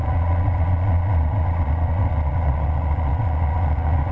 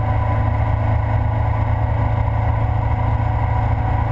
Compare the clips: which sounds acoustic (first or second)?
second